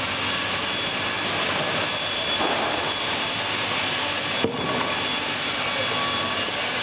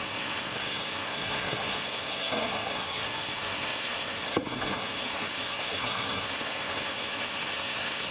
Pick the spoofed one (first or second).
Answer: second